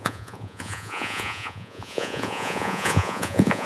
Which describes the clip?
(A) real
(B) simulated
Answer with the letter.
B